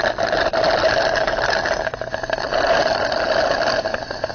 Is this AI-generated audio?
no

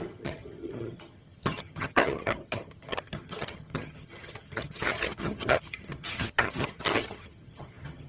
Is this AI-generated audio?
yes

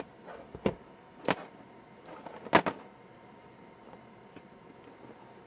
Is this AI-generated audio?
no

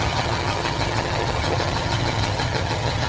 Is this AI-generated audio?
yes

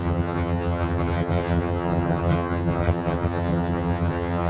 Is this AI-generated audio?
yes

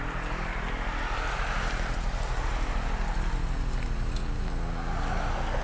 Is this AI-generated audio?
no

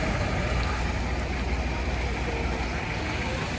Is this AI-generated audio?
no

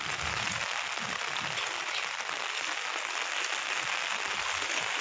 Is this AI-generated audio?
no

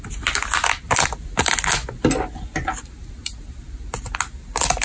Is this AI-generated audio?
no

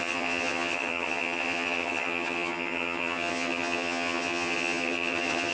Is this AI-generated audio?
yes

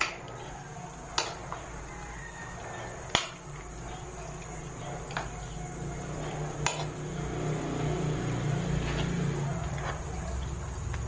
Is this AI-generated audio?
no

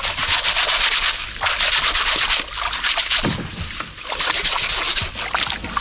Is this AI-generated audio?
no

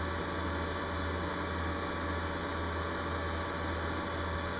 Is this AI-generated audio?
no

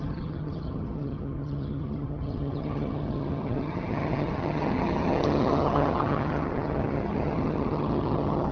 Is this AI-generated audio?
yes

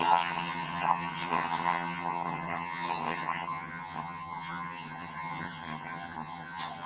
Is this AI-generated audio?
yes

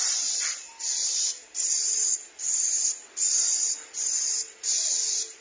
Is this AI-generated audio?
no